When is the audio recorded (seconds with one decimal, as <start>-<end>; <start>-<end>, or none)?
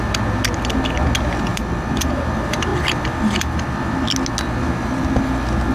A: 0.0-5.7